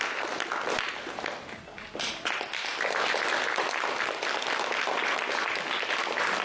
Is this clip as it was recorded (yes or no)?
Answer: yes